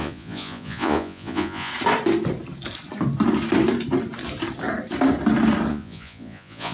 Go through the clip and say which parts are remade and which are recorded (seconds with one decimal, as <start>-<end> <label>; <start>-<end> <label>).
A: 0.0-1.7 remade; 1.7-5.7 recorded; 5.7-6.7 remade